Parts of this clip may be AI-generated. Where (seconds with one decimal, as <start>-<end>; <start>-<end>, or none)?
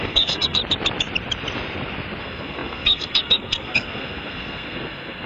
0.0-0.6; 2.2-5.3